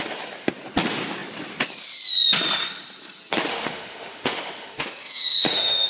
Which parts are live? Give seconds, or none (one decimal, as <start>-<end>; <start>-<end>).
0.0-3.5